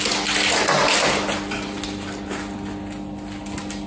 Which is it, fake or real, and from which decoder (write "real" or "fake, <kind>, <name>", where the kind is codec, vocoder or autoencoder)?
real